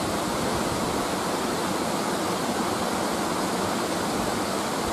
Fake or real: real